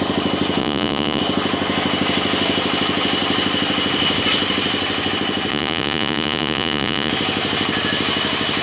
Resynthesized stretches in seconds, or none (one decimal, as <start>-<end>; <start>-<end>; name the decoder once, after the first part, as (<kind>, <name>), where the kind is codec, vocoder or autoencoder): 0.6-1.2 (vocoder, Vocos); 5.5-7.1